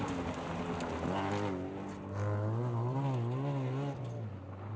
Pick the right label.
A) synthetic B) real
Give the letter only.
B